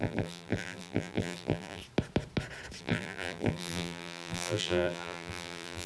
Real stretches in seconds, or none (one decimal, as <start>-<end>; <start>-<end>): 1.8-2.8